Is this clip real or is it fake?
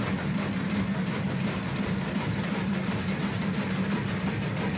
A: fake